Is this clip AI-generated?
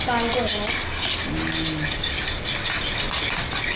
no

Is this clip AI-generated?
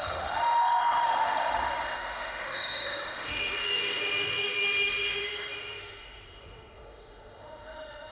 yes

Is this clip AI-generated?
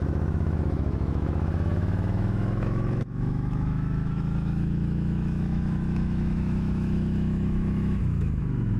yes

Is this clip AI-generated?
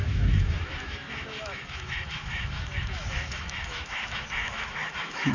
yes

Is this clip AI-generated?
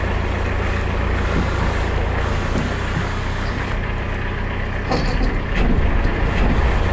no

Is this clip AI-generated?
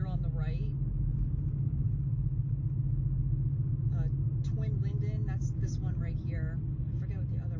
no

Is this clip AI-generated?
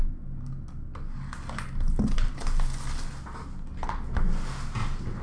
no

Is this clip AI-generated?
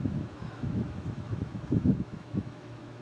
yes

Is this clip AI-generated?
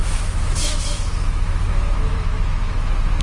yes